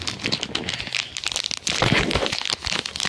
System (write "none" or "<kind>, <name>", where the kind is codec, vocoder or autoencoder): none